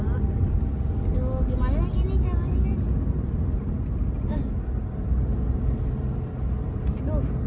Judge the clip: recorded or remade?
recorded